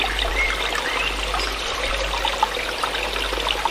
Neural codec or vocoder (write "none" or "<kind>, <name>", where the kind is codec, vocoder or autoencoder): vocoder, BigVGAN v2